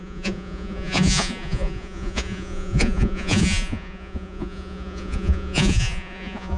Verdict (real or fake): fake